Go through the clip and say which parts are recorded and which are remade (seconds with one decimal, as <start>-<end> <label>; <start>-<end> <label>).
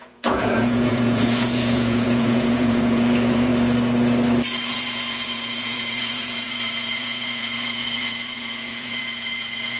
0.0-3.5 remade; 3.5-4.7 recorded; 4.7-9.8 remade